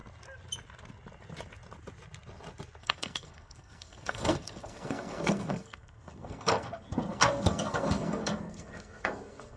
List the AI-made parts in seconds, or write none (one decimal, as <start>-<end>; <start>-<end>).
2.8-9.6